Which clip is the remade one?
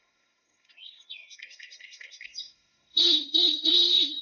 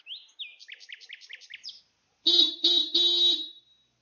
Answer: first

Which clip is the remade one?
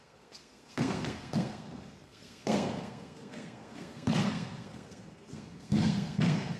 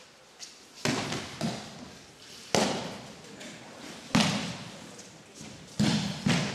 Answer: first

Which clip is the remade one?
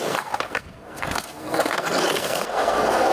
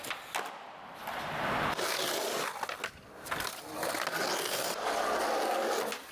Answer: first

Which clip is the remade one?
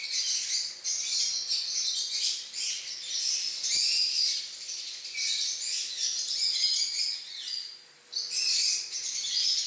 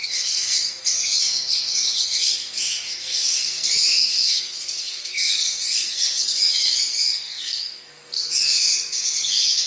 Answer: second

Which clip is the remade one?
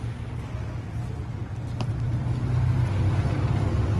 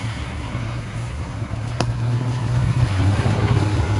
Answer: second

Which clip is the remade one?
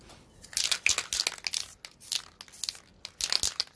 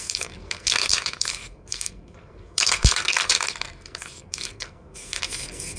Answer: second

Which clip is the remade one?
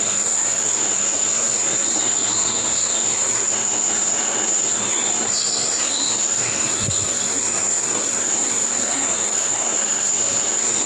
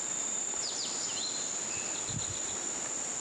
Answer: first